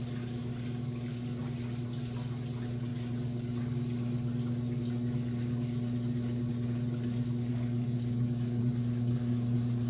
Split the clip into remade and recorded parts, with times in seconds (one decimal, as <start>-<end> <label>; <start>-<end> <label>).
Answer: 0.0-7.5 recorded; 7.5-8.6 remade; 8.6-9.9 recorded